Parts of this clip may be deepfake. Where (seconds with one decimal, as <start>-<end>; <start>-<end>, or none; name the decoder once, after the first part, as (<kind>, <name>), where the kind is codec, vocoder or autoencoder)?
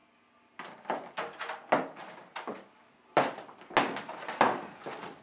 none